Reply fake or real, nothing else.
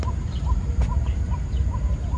real